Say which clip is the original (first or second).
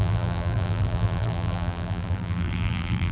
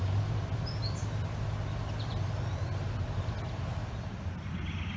second